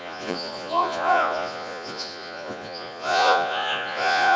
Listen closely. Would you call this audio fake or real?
fake